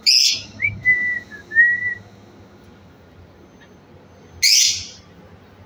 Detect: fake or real real